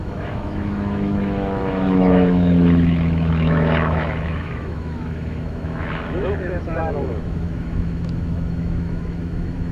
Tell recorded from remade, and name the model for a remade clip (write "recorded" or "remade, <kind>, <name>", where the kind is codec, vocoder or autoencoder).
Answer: remade, autoencoder, DAC-VAE